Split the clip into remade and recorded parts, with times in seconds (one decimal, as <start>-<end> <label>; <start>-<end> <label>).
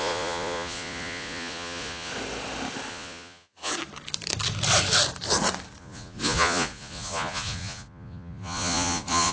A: 0.0-2.1 remade; 2.1-2.9 recorded; 2.9-3.7 remade; 3.7-5.8 recorded; 5.8-9.3 remade